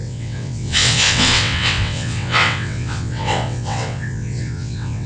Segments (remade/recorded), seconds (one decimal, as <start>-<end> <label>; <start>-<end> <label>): 0.0-5.1 remade